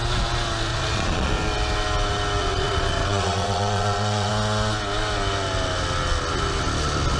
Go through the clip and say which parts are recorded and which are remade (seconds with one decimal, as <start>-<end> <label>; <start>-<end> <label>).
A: 0.0-0.7 recorded; 0.7-1.3 remade; 1.3-2.4 recorded; 2.4-4.3 remade; 4.3-7.2 recorded